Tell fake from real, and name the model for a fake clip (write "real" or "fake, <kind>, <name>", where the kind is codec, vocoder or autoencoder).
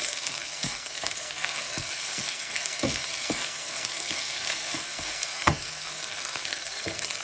fake, codec, SNAC